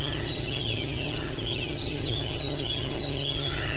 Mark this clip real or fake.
fake